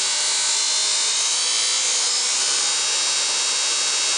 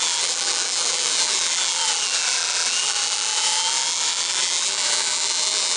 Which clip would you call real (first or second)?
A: first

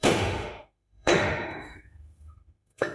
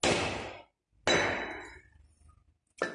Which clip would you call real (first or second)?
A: second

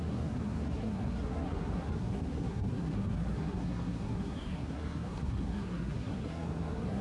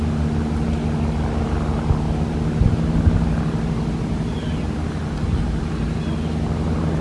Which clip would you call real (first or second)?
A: second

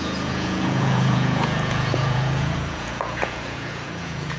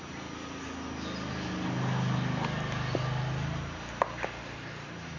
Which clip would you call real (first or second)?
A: second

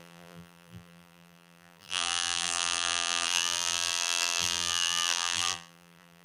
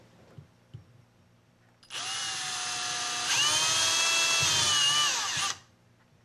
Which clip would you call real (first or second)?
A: second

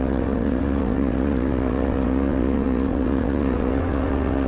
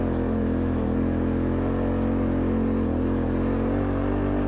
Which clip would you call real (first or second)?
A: second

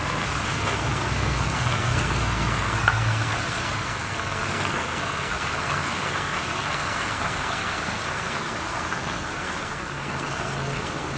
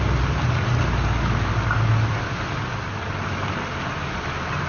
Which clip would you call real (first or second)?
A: second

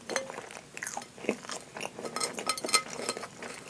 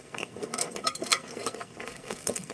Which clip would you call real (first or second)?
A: first